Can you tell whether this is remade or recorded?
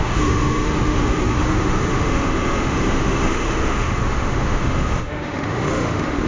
remade